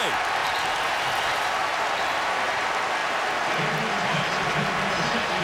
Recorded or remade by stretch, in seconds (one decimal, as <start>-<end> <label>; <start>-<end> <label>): 0.0-0.4 recorded; 0.4-1.5 remade; 1.5-5.4 recorded